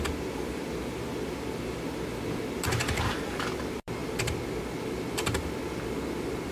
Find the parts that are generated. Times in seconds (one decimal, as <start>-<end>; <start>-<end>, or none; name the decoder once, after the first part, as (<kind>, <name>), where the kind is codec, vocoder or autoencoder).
0.0-6.5 (vocoder, BigVGAN v2)